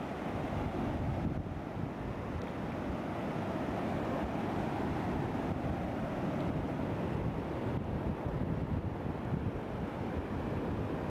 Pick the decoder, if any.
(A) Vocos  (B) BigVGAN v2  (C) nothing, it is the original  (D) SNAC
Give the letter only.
C